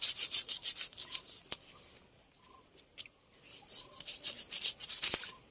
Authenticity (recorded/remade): recorded